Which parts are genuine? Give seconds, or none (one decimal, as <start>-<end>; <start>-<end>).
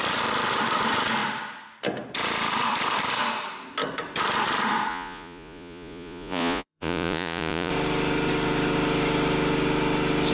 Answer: 0.0-4.9; 7.7-10.3